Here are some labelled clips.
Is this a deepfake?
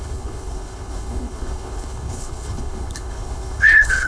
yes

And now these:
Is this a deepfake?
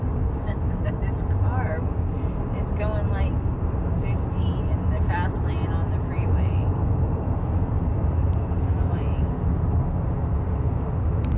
no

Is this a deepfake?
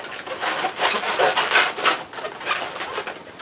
no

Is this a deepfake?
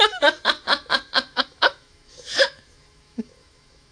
yes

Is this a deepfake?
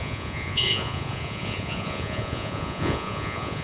yes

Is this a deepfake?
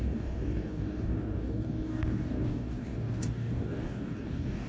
yes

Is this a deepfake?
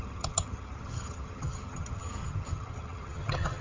yes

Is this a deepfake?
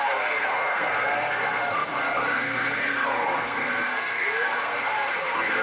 yes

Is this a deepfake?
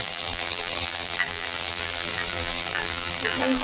yes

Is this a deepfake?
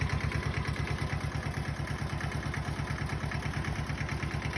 no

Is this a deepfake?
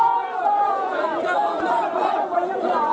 yes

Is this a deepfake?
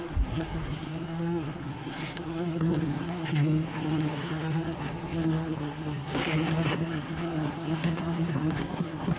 yes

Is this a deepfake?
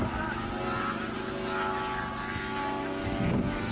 no